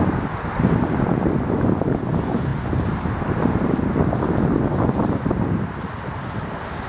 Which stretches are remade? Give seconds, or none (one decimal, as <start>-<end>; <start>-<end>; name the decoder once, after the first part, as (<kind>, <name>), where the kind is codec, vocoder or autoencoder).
none

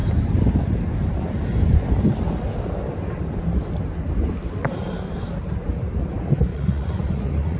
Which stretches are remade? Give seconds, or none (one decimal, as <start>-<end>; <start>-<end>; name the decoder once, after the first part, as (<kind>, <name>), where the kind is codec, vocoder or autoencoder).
6.5-7.6 (vocoder, Vocos)

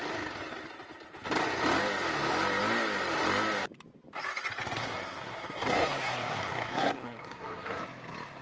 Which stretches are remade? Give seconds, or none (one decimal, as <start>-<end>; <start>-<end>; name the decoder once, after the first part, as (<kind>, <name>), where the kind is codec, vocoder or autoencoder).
4.8-7.8 (codec, SNAC)

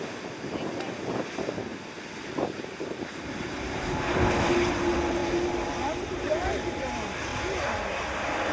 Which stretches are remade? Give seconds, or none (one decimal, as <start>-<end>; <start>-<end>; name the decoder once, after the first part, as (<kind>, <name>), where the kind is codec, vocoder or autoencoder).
0.0-5.2 (vocoder, BigVGAN v2); 6.1-8.5

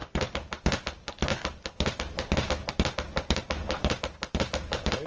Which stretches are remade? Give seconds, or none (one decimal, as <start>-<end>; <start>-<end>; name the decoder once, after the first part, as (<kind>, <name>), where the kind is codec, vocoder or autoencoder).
none

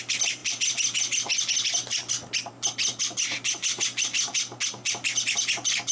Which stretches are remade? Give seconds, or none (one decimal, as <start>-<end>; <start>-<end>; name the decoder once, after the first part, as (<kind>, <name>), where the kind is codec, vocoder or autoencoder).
none

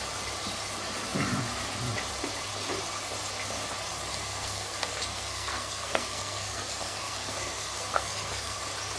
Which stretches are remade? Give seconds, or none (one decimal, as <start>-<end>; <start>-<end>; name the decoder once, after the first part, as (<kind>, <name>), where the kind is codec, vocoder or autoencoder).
4.1-8.6 (codec, SNAC)

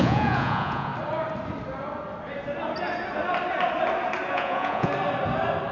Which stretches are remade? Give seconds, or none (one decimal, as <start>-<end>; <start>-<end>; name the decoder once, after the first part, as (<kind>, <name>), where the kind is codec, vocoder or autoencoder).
0.0-0.9 (vocoder, Vocos); 4.3-4.9